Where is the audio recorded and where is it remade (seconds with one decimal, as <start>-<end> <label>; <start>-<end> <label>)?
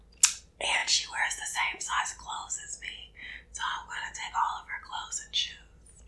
0.0-0.8 recorded; 0.8-2.0 remade; 2.0-6.1 recorded